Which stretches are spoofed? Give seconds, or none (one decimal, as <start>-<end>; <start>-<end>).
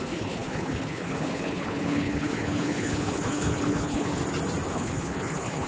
0.0-4.2; 4.7-5.7